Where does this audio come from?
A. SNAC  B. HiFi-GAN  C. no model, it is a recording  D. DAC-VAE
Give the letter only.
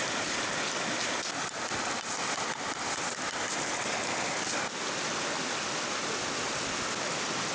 C